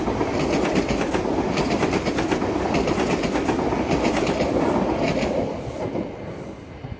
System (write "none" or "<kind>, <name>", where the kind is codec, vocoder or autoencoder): none